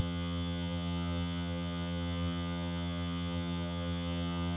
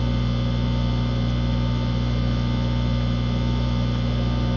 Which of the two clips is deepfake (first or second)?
first